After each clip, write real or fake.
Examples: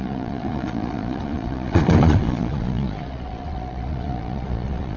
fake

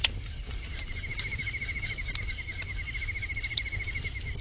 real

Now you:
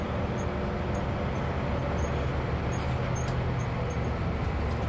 real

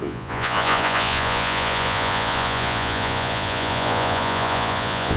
fake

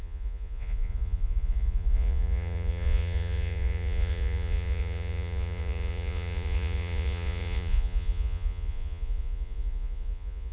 fake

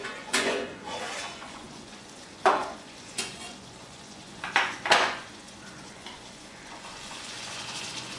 fake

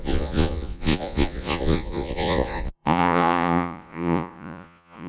fake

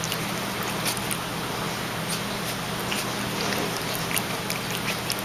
real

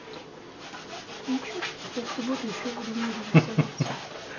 real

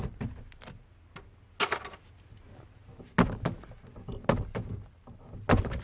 real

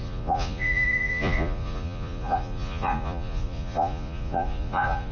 fake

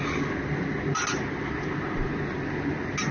real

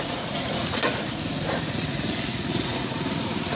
fake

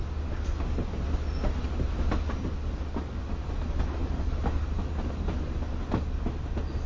real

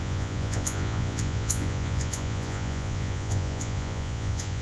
fake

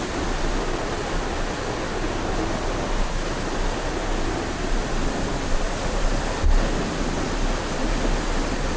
real